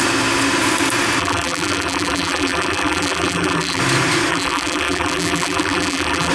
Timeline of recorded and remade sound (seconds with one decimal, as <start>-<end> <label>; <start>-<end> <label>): 0.0-1.2 recorded; 1.2-3.8 remade; 3.8-4.3 recorded; 4.3-6.3 remade